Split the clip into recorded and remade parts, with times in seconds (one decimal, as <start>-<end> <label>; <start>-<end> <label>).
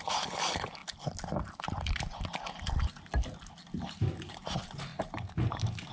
0.0-5.9 recorded